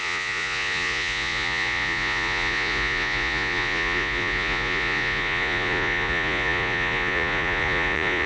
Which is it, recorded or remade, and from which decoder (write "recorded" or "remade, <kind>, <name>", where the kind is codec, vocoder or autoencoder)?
remade, vocoder, Vocos